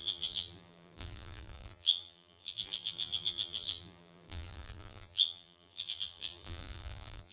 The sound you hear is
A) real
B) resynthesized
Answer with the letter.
B